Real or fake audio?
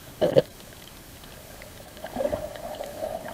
fake